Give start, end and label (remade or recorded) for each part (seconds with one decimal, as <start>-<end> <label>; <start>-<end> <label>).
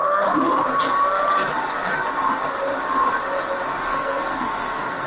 0.0-3.9 recorded; 3.9-5.1 remade